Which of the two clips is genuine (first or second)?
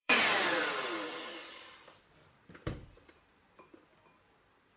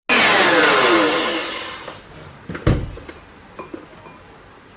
second